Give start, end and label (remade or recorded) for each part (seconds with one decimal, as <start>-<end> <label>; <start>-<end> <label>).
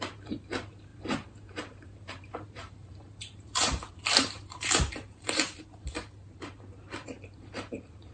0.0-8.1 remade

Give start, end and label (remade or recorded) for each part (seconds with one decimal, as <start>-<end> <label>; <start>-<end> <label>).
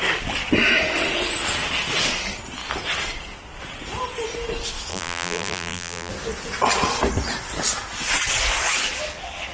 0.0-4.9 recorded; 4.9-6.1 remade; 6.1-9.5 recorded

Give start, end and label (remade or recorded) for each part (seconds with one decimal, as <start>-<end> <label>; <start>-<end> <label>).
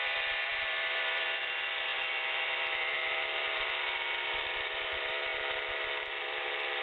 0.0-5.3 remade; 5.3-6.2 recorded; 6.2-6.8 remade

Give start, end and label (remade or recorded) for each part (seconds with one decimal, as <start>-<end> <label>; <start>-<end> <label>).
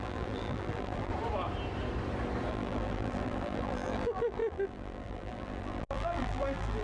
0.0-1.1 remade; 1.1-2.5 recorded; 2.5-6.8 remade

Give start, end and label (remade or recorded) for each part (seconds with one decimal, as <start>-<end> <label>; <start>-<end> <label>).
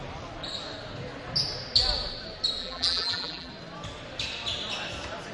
0.0-2.6 recorded; 2.6-3.5 remade; 3.5-5.3 recorded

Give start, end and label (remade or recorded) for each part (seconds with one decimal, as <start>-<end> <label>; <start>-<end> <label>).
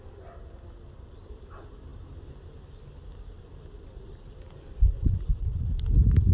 0.0-6.3 recorded